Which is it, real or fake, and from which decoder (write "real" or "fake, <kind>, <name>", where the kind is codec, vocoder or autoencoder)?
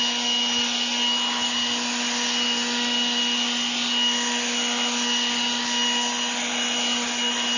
real